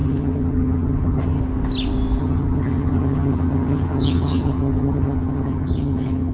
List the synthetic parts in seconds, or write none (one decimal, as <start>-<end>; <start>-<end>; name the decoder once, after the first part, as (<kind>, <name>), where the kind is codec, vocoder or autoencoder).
0.0-1.4 (vocoder, HiFi-GAN); 2.2-6.3